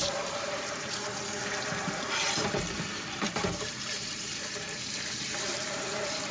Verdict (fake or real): fake